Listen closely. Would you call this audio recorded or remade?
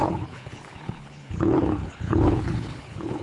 remade